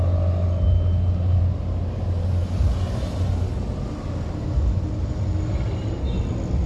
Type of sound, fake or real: real